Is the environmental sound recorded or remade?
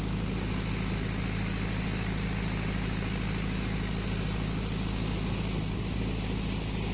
recorded